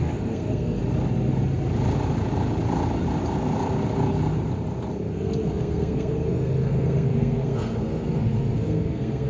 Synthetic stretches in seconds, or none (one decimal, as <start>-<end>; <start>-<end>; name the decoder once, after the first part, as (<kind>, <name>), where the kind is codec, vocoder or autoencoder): 0.0-0.8 (codec, SNAC); 5.1-9.3

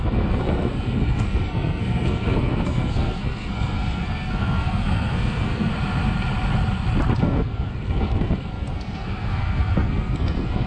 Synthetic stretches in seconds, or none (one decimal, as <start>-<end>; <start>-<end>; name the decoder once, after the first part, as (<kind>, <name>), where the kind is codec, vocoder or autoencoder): 0.0-5.7 (codec, SNAC); 7.2-10.7

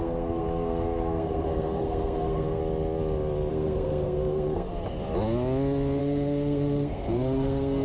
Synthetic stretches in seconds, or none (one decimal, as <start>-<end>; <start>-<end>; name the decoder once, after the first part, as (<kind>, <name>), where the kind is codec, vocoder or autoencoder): 0.0-2.6 (codec, SNAC); 3.5-4.7; 6.0-7.8

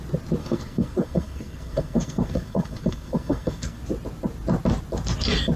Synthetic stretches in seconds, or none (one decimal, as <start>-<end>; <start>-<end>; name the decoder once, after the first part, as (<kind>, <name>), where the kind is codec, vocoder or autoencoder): 0.4-3.8 (codec, SNAC)